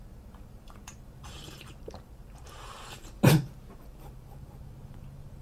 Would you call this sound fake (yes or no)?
yes